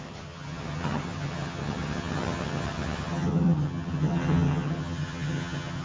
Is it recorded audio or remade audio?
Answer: remade